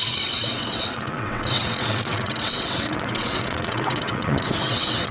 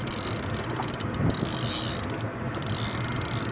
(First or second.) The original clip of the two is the second